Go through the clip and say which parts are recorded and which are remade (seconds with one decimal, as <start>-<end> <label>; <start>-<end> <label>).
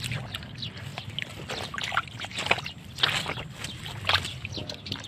0.0-5.1 recorded